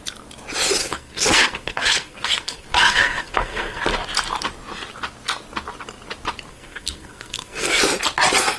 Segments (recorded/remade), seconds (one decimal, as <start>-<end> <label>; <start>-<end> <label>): 0.0-0.8 recorded; 0.8-3.8 remade; 3.8-6.5 recorded; 6.5-7.8 remade; 7.8-8.6 recorded